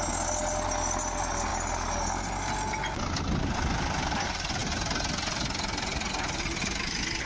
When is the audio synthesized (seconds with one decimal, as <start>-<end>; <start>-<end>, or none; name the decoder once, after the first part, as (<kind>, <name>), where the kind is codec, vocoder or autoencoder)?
none